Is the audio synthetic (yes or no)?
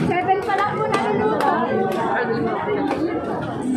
no